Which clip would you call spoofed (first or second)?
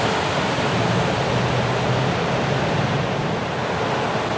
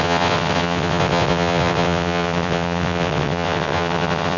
second